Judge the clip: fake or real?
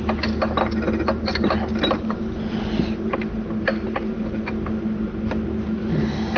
real